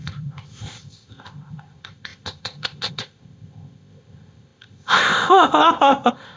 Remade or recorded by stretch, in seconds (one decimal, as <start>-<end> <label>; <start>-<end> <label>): 0.0-6.4 remade